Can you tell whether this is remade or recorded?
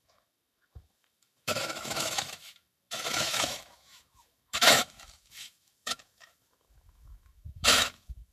remade